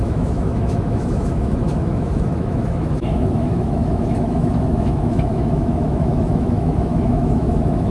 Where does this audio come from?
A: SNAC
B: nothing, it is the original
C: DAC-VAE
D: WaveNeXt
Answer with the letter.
C